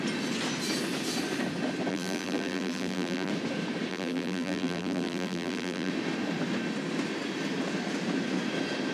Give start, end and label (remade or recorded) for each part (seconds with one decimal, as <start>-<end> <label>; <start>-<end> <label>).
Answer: 0.0-1.9 recorded; 1.9-3.3 remade; 3.3-3.9 recorded; 3.9-5.9 remade; 5.9-8.9 recorded